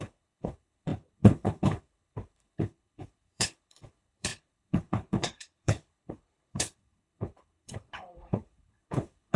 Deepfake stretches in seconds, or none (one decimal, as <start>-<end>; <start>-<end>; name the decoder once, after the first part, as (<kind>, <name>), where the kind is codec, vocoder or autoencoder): 0.0-9.4 (codec, HILCodec)